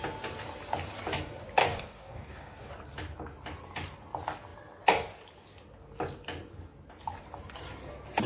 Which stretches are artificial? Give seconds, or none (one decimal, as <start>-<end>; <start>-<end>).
1.6-2.7